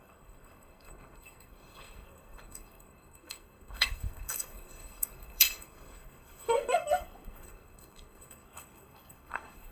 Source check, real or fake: fake